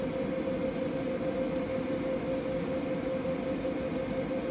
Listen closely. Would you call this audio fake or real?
real